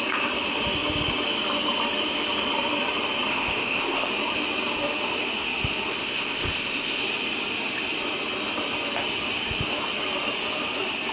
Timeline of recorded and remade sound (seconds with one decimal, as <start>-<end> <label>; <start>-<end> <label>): 0.0-3.3 recorded; 3.3-4.1 remade; 4.1-5.9 recorded; 5.9-7.0 remade; 7.0-11.1 recorded